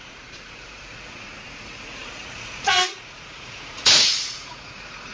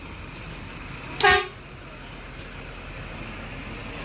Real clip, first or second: second